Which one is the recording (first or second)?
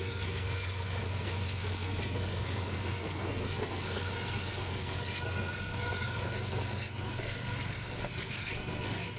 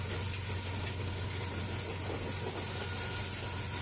second